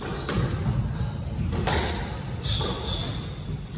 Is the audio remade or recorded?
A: recorded